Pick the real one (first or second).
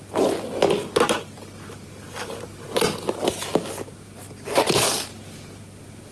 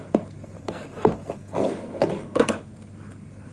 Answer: first